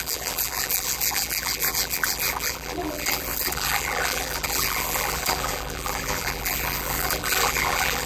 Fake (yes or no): yes